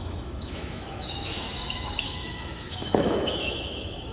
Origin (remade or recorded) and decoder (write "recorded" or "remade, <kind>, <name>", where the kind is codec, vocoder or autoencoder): remade, autoencoder, DAC-VAE